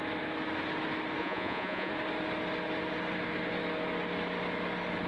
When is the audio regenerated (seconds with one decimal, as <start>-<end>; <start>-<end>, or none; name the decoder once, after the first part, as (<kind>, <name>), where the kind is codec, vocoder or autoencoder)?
1.2-1.9 (vocoder, Vocos)